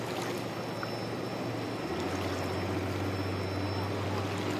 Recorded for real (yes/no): yes